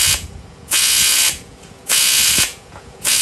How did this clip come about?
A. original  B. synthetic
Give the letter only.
B